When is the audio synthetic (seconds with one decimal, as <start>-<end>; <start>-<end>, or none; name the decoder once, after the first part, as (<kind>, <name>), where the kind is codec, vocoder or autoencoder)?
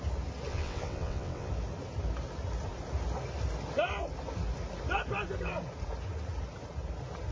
0.5-1.5 (vocoder, WaveNeXt)